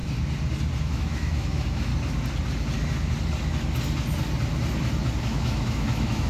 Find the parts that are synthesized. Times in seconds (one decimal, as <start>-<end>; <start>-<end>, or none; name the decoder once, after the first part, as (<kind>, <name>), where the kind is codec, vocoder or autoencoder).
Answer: 0.8-1.9 (autoencoder, DAC-VAE); 5.2-6.3